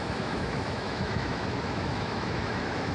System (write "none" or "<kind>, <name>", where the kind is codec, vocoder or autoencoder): autoencoder, DAC-VAE